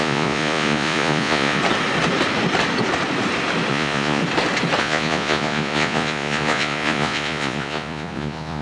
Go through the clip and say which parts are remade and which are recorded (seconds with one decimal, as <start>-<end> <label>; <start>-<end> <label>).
0.0-1.6 remade; 1.6-3.7 recorded; 3.7-4.2 remade; 4.2-4.8 recorded; 4.8-8.6 remade